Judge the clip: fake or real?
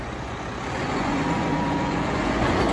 fake